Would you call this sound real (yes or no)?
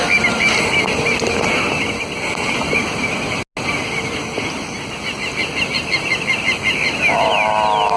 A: yes